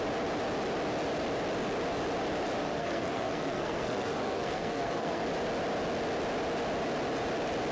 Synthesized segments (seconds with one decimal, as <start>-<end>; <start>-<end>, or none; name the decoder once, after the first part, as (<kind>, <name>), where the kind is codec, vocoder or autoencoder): 2.6-5.2 (codec, SNAC)